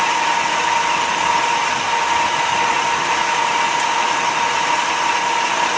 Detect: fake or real real